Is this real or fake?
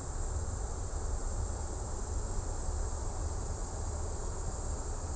real